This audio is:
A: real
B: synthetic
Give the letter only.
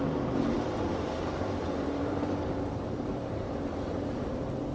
B